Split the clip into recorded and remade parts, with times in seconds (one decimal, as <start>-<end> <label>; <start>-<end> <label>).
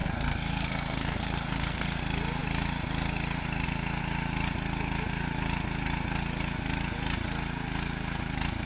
0.0-2.0 remade; 2.0-8.7 recorded